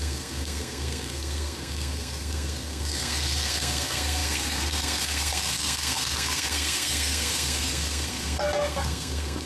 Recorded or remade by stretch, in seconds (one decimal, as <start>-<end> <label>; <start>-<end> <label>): 0.0-9.5 remade